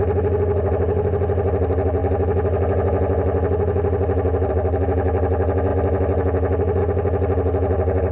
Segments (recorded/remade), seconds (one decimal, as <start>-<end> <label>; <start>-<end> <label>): 0.0-8.1 recorded